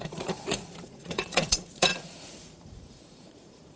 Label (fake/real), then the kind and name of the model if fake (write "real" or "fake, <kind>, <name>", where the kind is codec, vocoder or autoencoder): fake, vocoder, Vocos